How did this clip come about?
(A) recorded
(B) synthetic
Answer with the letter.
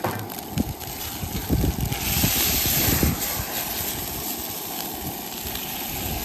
A